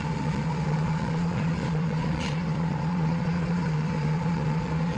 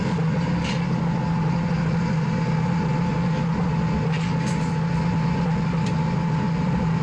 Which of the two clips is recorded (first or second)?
second